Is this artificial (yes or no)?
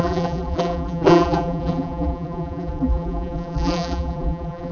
yes